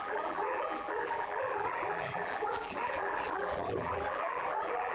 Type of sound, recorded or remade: remade